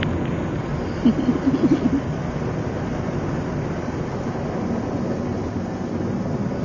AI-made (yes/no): no